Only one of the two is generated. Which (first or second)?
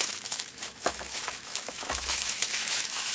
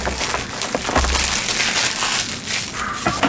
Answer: first